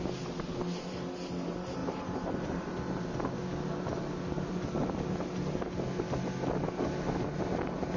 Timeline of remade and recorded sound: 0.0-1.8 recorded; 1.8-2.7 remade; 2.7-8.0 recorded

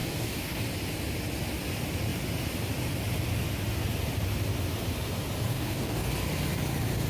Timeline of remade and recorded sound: 0.0-0.6 remade; 0.6-5.5 recorded; 5.5-6.1 remade; 6.1-7.1 recorded

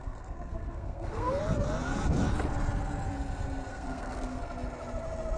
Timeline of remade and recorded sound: 0.0-1.4 remade; 1.4-3.7 recorded; 3.7-4.4 remade; 4.4-5.4 recorded

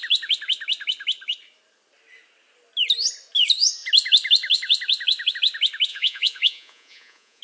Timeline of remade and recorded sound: 0.0-5.9 recorded; 5.9-7.4 remade

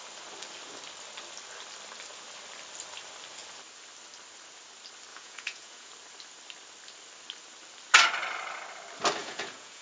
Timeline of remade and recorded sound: 0.0-5.1 recorded; 5.1-5.9 remade; 5.9-9.2 recorded; 9.2-9.8 remade